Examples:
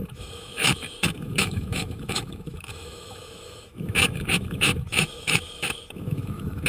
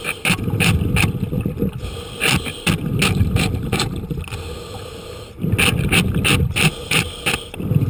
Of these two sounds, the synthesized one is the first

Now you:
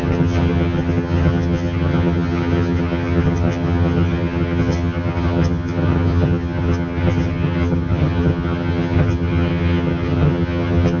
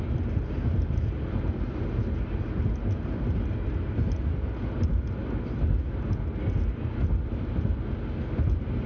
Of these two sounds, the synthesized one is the first